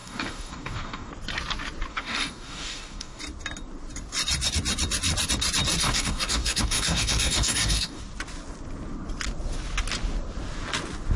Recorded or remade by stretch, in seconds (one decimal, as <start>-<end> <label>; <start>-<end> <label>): 0.0-1.1 remade; 1.1-1.9 recorded; 1.9-3.2 remade; 3.2-5.8 recorded; 5.8-8.0 remade; 8.0-11.2 recorded